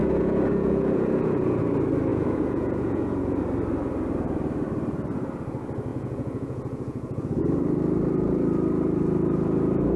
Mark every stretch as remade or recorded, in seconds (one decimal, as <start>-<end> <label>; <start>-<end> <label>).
0.0-1.6 remade; 1.6-2.1 recorded; 2.1-3.4 remade; 3.4-5.9 recorded; 5.9-7.4 remade; 7.4-10.0 recorded